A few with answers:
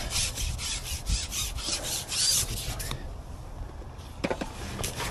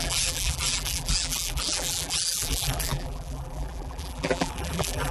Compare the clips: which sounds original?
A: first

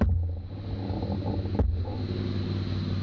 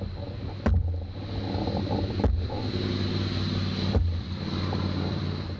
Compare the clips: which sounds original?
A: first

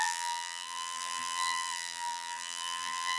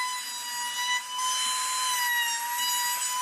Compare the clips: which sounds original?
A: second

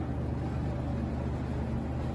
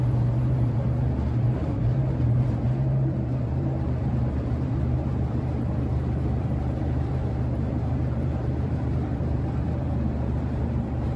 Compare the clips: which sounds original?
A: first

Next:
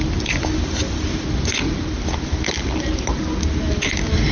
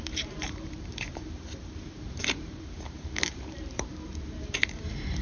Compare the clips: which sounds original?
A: first